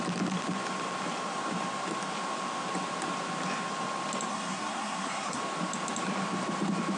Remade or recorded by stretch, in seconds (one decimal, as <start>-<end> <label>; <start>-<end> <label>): 0.0-4.3 recorded; 4.3-5.4 remade; 5.4-7.0 recorded